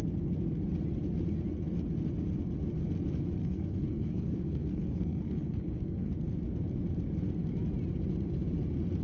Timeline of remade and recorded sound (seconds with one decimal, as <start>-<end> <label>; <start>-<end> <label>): 0.0-3.4 recorded; 3.4-6.1 remade; 6.1-9.0 recorded